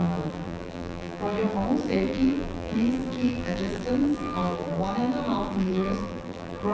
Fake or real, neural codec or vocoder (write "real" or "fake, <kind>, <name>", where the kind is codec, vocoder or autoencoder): fake, vocoder, BigVGAN v2